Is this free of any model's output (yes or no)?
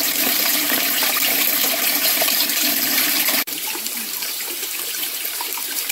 no